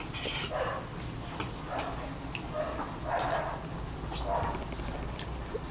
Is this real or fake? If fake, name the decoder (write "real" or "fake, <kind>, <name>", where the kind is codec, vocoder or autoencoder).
real